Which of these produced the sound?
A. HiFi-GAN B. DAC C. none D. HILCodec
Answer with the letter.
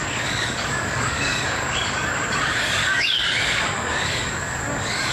B